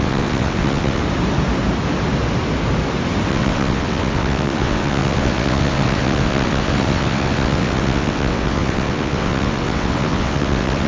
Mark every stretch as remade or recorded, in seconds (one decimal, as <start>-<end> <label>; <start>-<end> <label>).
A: 0.0-1.0 remade; 1.0-3.3 recorded; 3.3-10.9 remade